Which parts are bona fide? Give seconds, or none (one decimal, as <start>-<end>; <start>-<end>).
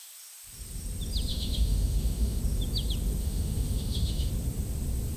0.0-1.3; 2.4-3.2; 4.3-5.2